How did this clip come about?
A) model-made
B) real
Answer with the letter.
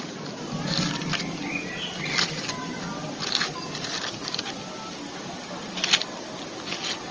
B